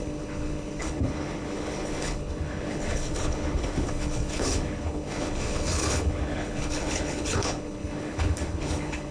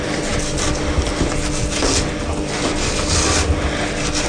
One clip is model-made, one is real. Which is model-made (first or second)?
first